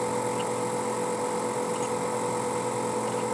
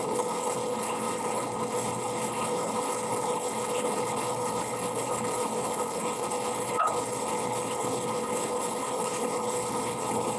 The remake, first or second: second